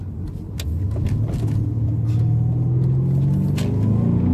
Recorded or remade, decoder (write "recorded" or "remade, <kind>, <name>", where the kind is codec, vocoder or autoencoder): recorded